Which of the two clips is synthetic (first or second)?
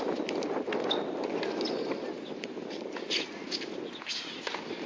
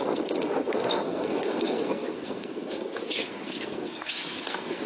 second